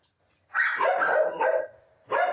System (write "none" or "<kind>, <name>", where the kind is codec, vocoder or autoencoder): none